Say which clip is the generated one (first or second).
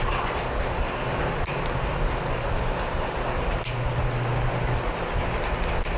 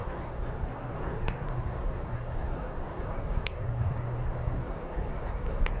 second